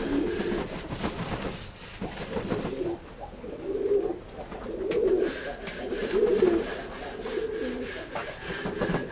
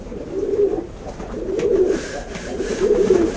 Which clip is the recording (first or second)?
first